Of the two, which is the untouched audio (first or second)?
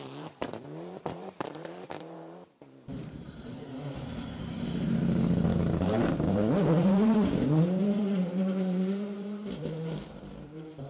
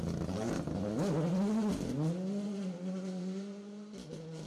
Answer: second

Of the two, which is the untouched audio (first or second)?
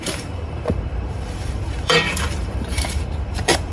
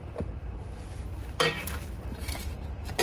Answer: second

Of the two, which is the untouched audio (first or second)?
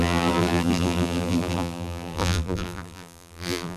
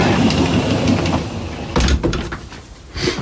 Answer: second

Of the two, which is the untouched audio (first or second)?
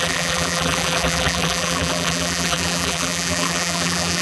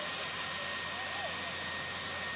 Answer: second